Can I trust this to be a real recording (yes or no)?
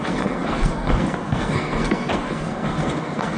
no